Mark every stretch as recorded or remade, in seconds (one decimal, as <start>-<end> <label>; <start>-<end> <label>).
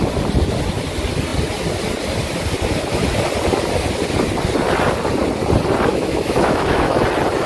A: 0.0-5.9 recorded; 5.9-6.9 remade; 6.9-7.5 recorded